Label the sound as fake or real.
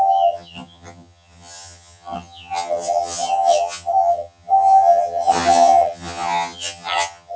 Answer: fake